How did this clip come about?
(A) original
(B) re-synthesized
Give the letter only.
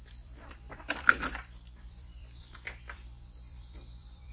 B